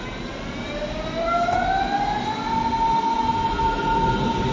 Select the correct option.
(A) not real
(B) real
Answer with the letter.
B